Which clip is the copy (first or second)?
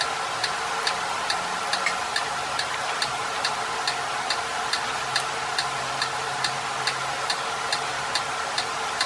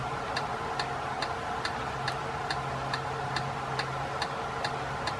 first